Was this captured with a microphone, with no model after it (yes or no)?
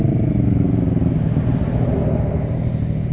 yes